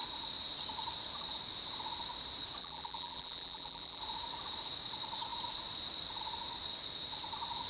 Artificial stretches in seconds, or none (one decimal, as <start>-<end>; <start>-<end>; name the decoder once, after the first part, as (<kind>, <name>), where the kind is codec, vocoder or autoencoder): 2.6-4.0 (vocoder, BigVGAN v2)